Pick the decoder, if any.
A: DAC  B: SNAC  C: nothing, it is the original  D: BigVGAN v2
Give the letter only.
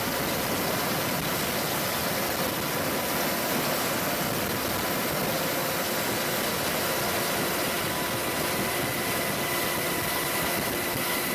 C